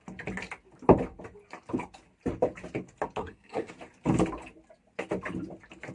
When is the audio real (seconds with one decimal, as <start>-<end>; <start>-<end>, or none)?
0.0-3.2; 3.7-5.9